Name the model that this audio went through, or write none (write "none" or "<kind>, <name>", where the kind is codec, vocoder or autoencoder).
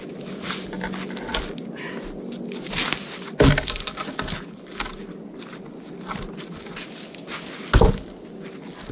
none